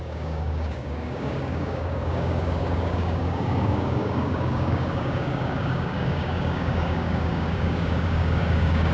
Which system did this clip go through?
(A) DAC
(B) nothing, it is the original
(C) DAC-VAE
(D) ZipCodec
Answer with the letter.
A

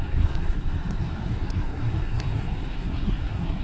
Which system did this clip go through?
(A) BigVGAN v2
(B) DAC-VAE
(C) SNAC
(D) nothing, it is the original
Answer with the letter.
C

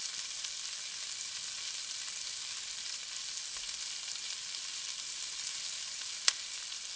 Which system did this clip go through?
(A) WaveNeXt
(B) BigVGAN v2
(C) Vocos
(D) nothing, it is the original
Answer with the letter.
D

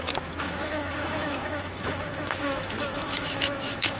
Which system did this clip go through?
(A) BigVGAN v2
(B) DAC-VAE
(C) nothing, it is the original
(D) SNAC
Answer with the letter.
B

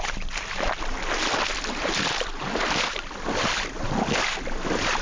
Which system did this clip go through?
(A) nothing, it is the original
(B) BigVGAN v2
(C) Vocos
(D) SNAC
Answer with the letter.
A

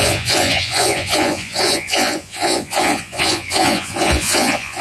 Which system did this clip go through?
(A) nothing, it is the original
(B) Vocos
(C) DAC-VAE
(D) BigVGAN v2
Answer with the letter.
B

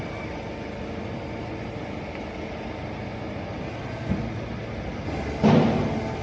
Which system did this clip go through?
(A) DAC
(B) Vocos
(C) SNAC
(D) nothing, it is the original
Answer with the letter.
D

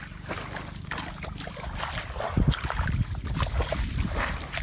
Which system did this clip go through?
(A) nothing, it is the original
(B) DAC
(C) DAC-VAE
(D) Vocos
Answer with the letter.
A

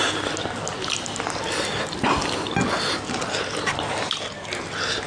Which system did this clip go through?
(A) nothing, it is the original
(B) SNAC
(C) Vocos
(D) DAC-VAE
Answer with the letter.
A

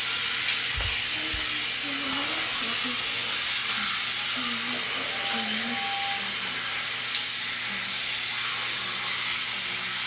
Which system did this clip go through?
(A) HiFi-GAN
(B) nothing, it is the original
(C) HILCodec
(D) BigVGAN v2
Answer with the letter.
B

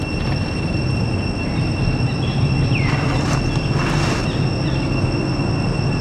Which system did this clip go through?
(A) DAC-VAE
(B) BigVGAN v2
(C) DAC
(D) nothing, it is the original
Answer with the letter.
D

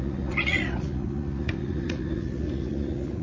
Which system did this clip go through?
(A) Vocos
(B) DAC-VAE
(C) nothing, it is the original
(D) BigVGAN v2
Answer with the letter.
A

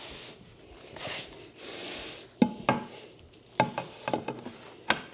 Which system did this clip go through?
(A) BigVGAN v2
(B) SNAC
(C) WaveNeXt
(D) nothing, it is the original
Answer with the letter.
D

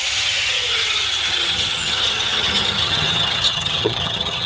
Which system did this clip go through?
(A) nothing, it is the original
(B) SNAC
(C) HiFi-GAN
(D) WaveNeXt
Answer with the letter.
C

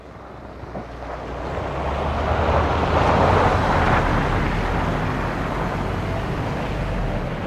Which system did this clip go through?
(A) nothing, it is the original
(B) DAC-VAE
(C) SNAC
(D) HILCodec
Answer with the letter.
A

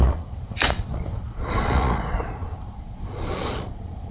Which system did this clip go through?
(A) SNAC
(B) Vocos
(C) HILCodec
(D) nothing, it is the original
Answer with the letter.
B